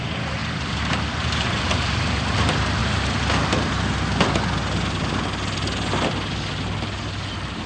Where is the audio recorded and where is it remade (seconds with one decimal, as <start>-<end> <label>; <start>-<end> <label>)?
0.0-2.8 remade; 2.8-7.7 recorded